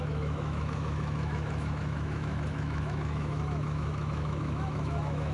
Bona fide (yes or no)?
no